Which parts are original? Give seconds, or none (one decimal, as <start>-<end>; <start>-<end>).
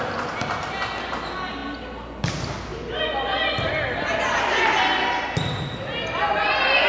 0.0-6.9